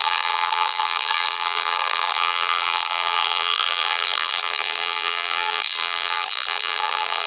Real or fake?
fake